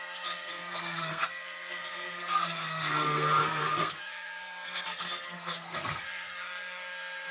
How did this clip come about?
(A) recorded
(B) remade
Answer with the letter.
B